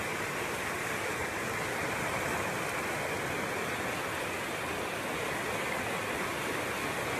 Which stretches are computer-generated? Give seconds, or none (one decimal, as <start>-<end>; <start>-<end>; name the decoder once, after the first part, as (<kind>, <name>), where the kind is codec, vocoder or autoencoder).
none